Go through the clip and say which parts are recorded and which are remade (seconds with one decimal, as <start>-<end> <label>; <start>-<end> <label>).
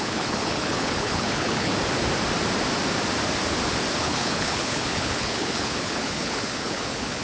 0.0-1.7 remade; 1.7-4.0 recorded; 4.0-7.2 remade